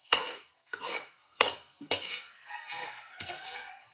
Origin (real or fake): fake